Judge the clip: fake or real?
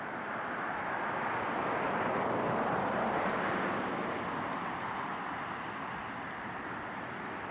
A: real